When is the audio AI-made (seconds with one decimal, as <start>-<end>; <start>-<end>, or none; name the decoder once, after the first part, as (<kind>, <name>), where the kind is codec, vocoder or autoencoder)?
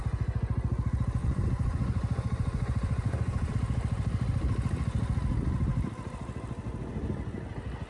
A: 1.2-3.5 (vocoder, Vocos)